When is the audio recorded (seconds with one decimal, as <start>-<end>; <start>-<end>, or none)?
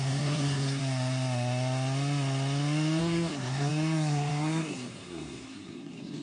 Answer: 0.8-3.0